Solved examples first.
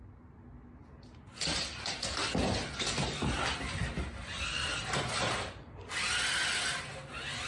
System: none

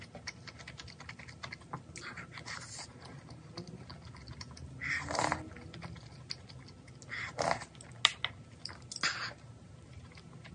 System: none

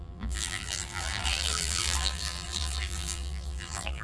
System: vocoder, BigVGAN v2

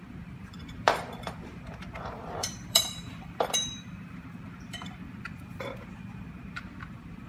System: vocoder, BigVGAN v2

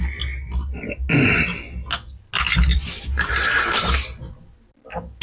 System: none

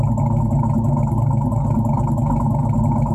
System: none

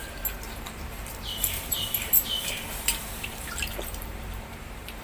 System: vocoder, BigVGAN v2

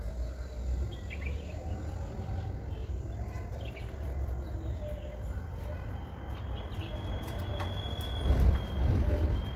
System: none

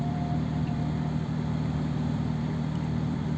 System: vocoder, BigVGAN v2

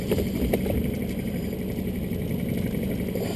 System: vocoder, BigVGAN v2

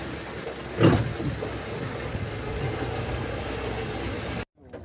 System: none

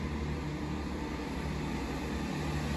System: none